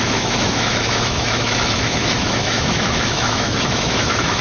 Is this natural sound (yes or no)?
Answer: no